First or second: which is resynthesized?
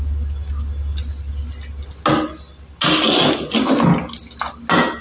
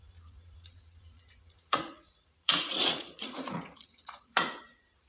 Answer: second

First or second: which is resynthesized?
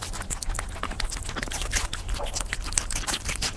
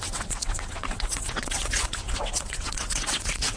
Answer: second